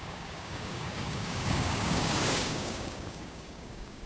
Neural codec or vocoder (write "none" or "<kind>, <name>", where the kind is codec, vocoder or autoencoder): codec, DAC